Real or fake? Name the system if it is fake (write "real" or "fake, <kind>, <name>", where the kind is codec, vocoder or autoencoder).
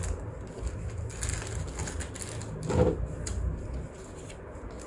real